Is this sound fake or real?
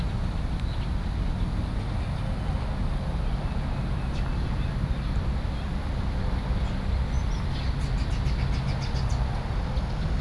real